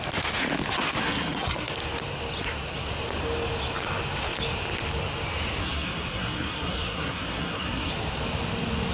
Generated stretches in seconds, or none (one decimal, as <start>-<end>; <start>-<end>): 1.0-1.7; 5.6-7.9